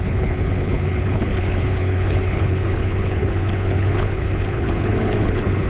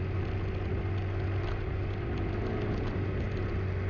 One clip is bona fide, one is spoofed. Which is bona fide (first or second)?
second